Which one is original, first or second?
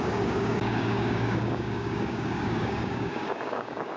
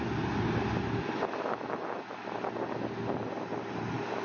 second